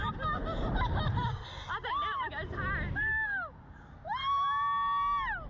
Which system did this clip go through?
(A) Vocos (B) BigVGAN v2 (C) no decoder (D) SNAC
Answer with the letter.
C